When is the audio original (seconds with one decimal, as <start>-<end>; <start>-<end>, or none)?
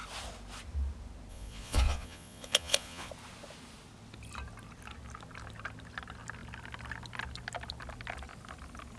0.0-1.3; 3.1-9.0